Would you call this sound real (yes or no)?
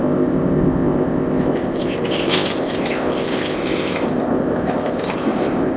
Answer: no